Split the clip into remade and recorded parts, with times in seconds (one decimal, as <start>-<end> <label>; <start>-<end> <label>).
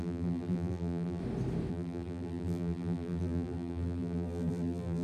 0.0-1.2 remade; 1.2-1.7 recorded; 1.7-5.0 remade